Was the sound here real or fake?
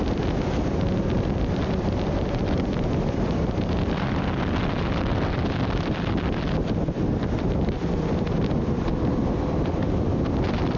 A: fake